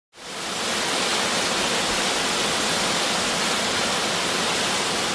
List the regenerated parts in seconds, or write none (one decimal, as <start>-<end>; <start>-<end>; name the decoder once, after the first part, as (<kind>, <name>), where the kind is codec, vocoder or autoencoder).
none